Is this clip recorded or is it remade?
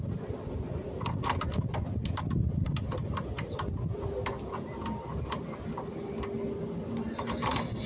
recorded